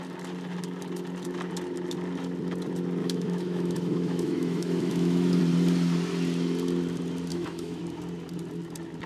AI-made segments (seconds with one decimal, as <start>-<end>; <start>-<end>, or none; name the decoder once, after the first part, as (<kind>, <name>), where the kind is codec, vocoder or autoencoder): 3.0-5.4 (autoencoder, DAC-VAE); 7.3-7.8